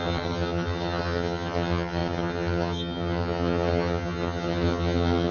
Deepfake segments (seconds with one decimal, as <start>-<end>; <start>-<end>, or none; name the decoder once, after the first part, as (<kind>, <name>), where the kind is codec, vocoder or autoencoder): 0.0-5.3 (vocoder, HiFi-GAN)